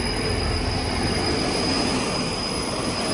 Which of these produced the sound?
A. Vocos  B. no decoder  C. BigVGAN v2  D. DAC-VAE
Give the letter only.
B